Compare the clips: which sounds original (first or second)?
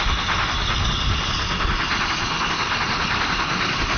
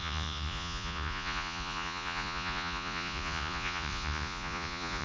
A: first